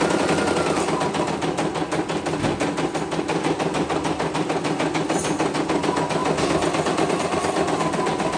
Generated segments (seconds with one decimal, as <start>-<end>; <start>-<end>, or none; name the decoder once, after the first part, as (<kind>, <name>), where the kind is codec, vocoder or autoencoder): none